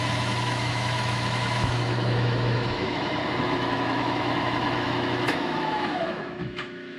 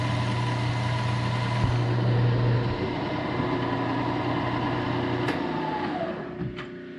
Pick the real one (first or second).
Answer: second